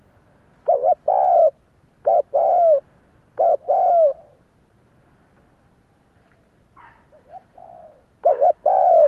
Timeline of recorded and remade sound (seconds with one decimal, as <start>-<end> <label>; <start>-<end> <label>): 0.0-7.4 recorded; 7.4-9.1 remade